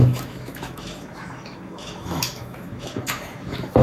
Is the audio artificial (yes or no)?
yes